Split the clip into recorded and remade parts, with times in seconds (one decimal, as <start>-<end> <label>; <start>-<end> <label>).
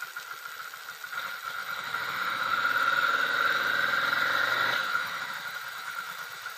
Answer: 0.0-1.6 recorded; 1.6-3.7 remade; 3.7-4.8 recorded; 4.8-6.6 remade